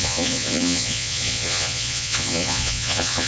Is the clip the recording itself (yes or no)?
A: no